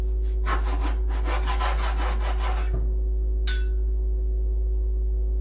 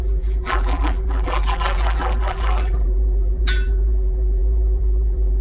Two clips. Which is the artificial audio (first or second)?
second